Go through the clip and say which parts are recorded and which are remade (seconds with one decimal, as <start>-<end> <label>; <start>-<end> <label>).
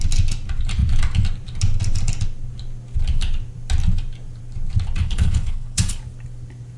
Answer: 0.0-5.0 recorded; 5.0-6.0 remade; 6.0-6.8 recorded